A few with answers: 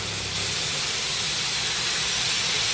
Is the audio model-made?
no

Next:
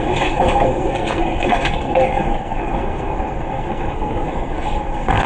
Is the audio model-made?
yes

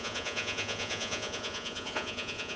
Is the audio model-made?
yes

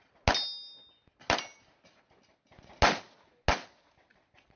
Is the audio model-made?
no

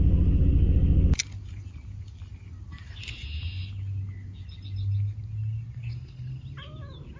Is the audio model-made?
no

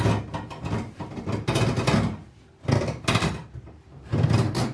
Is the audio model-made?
no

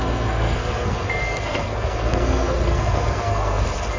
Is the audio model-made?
yes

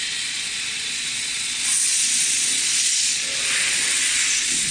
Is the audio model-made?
yes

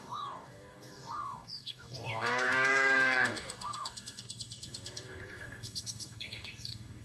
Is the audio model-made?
yes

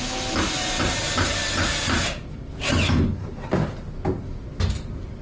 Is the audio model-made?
no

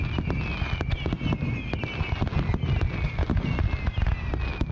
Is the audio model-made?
no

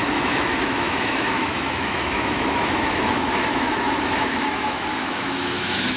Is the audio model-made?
yes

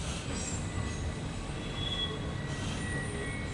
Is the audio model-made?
no